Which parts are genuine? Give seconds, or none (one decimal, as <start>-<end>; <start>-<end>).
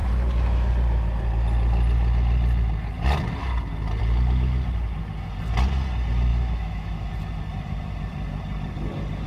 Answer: 0.0-6.3; 7.1-9.3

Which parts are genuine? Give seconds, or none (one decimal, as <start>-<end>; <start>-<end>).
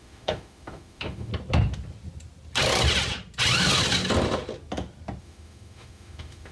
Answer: 1.3-5.2